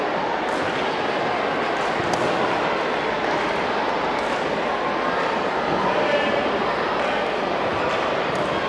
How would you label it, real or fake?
real